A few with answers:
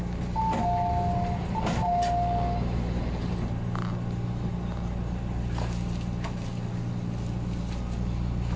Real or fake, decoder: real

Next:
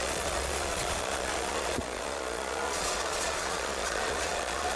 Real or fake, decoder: fake, vocoder, Vocos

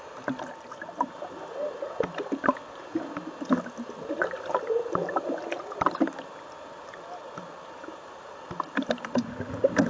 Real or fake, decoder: real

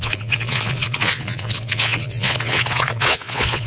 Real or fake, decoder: fake, vocoder, Vocos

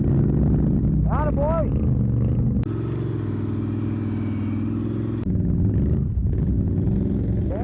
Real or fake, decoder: real